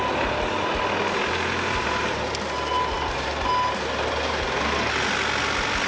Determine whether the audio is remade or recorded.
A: recorded